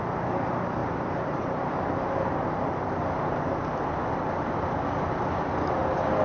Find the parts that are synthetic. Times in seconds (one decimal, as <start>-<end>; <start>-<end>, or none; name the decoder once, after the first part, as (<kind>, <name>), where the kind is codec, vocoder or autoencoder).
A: 0.8-1.9 (vocoder, BigVGAN v2)